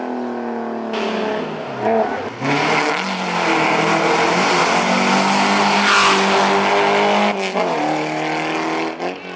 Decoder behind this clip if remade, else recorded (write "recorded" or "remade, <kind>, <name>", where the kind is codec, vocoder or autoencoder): recorded